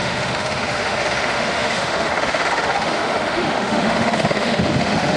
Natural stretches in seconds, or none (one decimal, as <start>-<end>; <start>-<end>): none